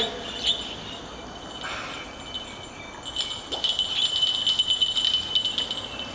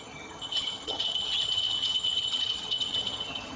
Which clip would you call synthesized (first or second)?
second